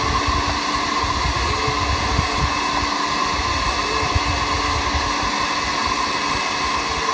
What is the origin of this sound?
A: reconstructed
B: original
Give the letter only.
B